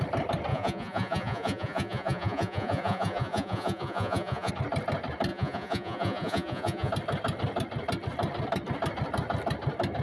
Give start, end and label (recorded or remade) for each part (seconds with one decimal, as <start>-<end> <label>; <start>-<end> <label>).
0.0-0.5 recorded; 0.5-4.5 remade; 4.5-5.3 recorded; 5.3-6.9 remade; 6.9-10.0 recorded